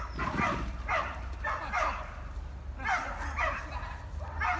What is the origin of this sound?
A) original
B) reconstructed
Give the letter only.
A